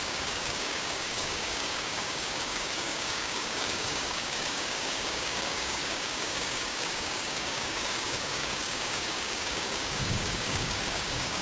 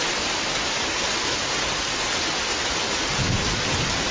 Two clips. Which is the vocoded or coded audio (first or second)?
first